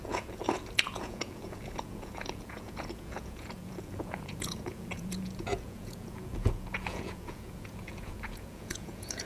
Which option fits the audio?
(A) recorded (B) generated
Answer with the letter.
B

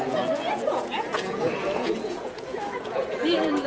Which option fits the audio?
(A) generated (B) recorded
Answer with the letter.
A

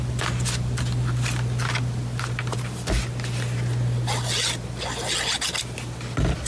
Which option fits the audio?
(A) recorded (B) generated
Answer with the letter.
A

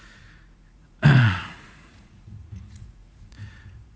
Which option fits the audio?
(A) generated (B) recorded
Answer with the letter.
A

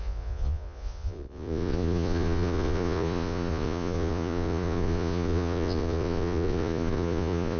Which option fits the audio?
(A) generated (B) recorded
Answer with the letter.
A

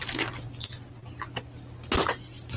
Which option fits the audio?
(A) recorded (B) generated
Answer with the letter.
A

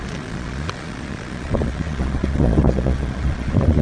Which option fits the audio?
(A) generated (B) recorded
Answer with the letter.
A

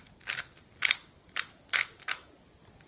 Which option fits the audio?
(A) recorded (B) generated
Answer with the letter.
A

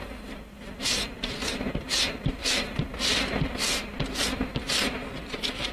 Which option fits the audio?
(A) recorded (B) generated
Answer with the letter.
A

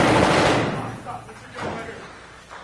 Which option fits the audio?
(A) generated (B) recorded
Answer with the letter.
B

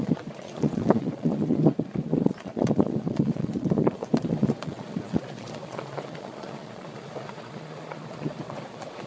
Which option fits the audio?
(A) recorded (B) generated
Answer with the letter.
B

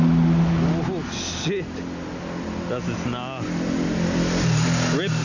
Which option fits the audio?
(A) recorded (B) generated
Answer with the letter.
A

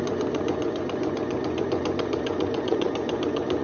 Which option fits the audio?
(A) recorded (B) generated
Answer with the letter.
B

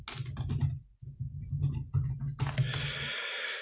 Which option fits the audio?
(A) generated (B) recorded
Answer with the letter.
B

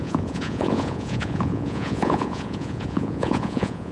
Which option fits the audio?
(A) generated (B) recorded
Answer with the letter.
A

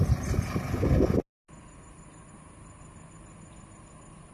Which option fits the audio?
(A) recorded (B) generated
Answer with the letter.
A